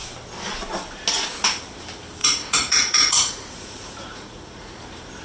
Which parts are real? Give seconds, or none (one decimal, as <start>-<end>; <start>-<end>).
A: 0.0-2.2; 4.8-5.2